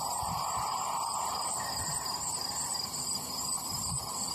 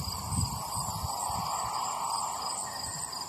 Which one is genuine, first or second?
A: second